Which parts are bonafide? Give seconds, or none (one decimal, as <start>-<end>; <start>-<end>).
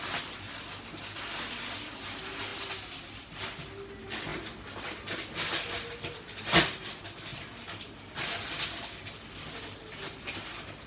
0.0-2.5; 3.4-7.3; 8.3-10.9